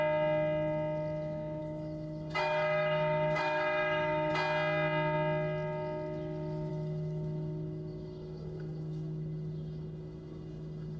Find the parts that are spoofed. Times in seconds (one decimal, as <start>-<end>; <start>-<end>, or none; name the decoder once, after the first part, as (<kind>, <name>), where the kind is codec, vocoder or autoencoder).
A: 1.6-4.3 (autoencoder, DAC-VAE); 6.7-11.0